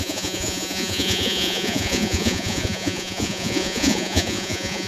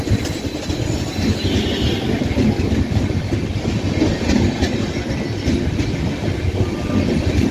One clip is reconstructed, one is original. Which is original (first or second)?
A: second